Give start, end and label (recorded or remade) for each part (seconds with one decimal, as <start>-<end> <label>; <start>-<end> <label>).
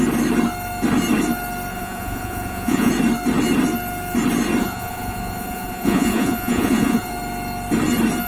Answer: 0.0-1.7 recorded; 1.7-2.9 remade; 2.9-4.6 recorded; 4.6-7.1 remade; 7.1-8.3 recorded